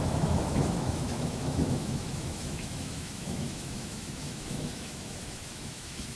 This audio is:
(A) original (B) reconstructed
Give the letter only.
B